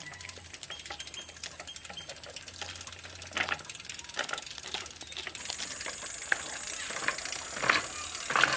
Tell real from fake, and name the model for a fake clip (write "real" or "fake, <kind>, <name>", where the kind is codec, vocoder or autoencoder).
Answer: real